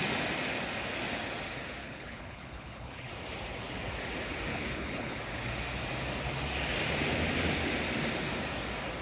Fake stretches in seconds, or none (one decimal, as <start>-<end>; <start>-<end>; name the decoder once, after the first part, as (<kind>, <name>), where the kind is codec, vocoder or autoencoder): 1.8-3.1 (codec, HILCodec); 4.5-5.2